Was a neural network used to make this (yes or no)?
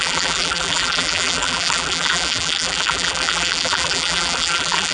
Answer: yes